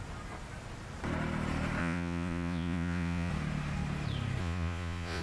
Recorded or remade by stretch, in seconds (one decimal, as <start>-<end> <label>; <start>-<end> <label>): 0.0-1.8 recorded; 1.8-3.3 remade; 3.3-4.4 recorded; 4.4-5.2 remade